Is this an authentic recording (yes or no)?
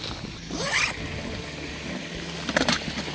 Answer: yes